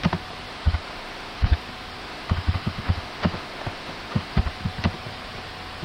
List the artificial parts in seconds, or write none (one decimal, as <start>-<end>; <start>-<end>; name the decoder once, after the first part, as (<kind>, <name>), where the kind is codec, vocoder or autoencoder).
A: 0.5-1.6 (autoencoder, DAC-VAE); 2.0-4.4